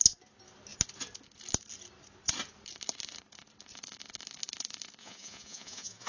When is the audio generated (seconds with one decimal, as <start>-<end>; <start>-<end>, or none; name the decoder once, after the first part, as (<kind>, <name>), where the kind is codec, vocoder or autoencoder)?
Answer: 5.0-6.1 (vocoder, Vocos)

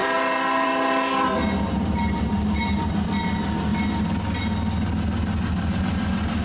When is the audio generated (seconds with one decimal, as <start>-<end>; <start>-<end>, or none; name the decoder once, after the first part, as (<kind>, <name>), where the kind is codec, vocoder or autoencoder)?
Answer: 0.0-3.0 (vocoder, BigVGAN v2)

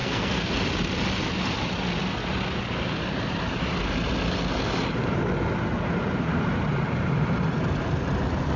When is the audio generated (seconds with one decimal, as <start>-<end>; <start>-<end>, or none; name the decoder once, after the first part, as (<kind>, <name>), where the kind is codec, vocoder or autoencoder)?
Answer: 0.0-0.5 (codec, SNAC)

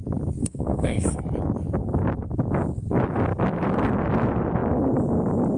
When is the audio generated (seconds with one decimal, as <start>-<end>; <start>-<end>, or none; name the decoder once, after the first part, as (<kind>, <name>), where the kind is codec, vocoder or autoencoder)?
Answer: 0.4-1.2 (codec, SNAC)

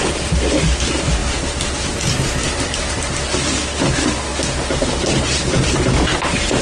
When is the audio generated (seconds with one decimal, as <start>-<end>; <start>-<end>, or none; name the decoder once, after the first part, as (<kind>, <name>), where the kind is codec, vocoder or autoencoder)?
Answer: 0.0-4.3 (vocoder, BigVGAN v2); 4.8-6.6